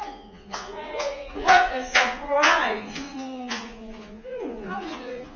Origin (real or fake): fake